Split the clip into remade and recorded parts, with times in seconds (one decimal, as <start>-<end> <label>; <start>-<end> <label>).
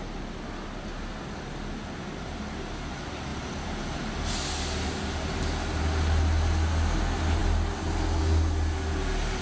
0.0-3.3 recorded; 3.3-4.3 remade; 4.3-9.4 recorded